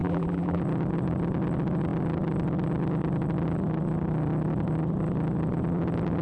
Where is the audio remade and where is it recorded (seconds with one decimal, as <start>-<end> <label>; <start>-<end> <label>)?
0.0-0.6 remade; 0.6-6.2 recorded